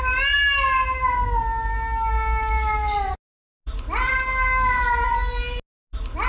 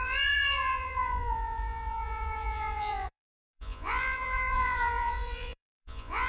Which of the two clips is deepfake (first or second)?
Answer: second